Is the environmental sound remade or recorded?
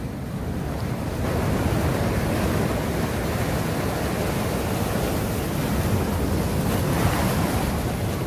recorded